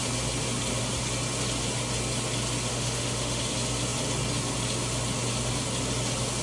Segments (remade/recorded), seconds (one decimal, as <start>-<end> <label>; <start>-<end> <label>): 0.0-2.7 recorded; 2.7-3.4 remade; 3.4-6.4 recorded